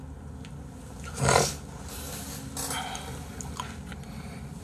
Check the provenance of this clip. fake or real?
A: real